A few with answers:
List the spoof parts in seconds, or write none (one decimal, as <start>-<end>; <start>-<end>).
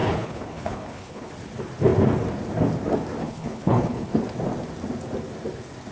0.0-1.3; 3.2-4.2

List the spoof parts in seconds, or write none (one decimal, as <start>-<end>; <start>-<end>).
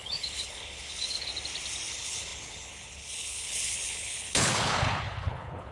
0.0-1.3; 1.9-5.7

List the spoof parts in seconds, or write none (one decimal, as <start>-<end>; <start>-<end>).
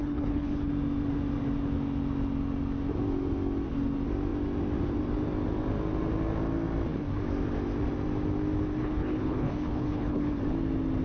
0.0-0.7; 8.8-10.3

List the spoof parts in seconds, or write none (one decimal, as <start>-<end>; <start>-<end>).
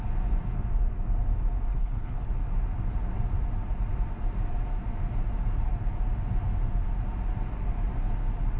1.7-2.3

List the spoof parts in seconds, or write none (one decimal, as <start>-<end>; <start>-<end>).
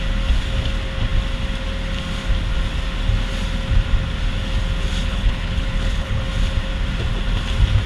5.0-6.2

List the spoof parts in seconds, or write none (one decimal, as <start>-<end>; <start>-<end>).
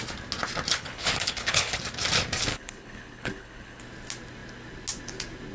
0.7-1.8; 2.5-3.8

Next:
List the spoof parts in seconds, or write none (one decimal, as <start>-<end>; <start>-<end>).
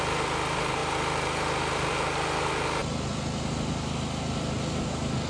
none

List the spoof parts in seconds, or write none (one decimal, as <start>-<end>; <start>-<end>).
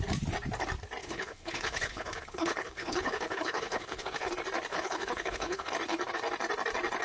1.0-4.3; 4.7-5.7